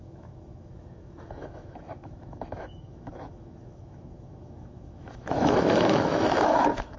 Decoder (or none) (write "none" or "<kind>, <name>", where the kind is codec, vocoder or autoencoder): autoencoder, DAC-VAE